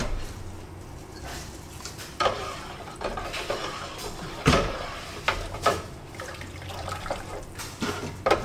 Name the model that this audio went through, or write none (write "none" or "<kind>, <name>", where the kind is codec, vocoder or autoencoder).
vocoder, BigVGAN v2